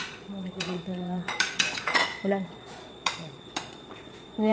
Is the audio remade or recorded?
remade